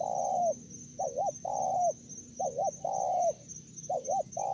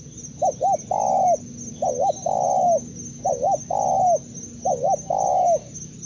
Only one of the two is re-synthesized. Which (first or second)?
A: first